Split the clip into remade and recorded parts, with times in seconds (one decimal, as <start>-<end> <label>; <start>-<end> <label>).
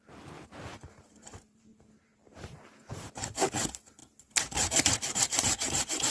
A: 0.0-6.1 remade